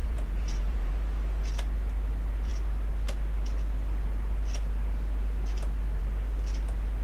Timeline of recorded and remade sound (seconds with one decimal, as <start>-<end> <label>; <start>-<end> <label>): 0.0-0.9 remade; 0.9-7.0 recorded